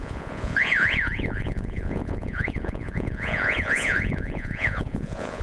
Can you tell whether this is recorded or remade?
remade